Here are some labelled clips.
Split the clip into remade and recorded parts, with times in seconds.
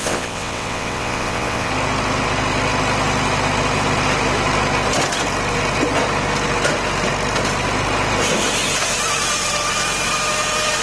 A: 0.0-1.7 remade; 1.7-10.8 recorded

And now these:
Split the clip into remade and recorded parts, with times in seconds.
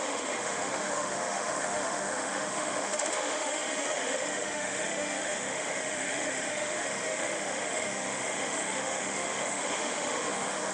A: 0.0-10.7 remade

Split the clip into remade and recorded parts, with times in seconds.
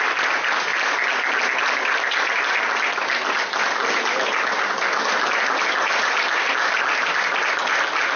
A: 0.0-8.2 recorded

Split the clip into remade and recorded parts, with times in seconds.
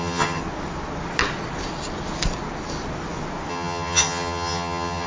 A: 0.0-0.4 remade; 0.4-3.5 recorded; 3.5-5.1 remade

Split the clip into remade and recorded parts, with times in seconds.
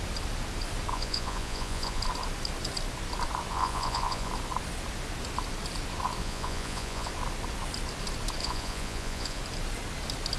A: 0.0-0.9 recorded; 0.9-2.0 remade; 2.0-3.5 recorded; 3.5-4.3 remade; 4.3-6.2 recorded; 6.2-7.1 remade; 7.1-8.4 recorded; 8.4-9.4 remade; 9.4-10.4 recorded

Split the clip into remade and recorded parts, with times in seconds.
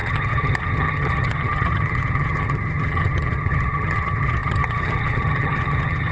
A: 0.0-6.1 remade